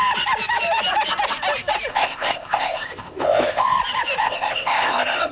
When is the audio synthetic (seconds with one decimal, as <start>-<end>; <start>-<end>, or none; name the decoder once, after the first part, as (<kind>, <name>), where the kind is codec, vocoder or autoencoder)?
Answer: 1.9-3.8 (codec, ZipCodec); 4.2-5.3